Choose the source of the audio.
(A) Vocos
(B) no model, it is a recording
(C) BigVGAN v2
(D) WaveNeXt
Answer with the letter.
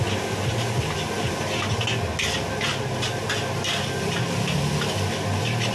B